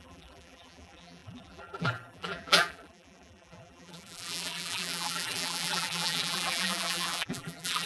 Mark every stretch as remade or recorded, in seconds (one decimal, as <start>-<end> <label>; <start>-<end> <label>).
0.0-7.9 remade